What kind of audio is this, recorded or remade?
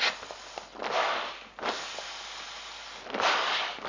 recorded